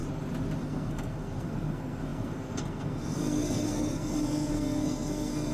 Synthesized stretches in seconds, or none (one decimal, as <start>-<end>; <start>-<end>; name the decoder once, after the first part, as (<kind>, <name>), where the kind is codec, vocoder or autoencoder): 0.6-5.5 (codec, SNAC)